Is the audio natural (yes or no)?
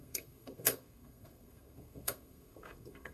no